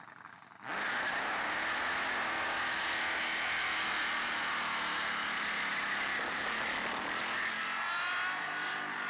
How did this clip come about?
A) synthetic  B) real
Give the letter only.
B